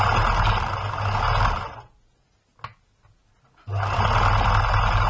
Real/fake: real